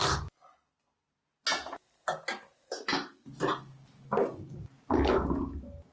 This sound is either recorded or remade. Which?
recorded